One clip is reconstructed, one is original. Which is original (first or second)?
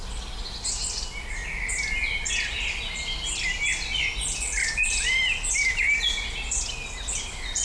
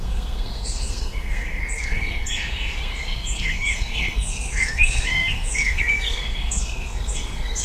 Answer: first